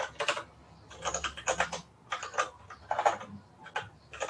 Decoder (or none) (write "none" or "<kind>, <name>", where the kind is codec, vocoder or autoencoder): none